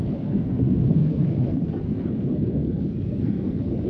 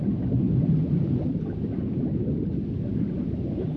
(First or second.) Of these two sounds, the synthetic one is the first